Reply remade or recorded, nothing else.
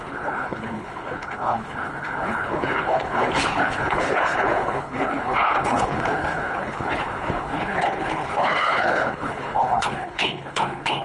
remade